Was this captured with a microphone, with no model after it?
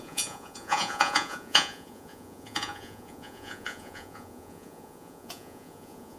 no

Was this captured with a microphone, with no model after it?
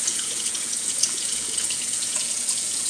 no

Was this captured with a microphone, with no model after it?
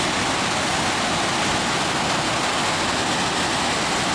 yes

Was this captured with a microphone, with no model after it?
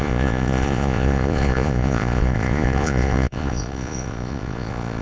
no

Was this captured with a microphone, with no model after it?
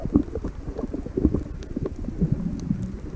yes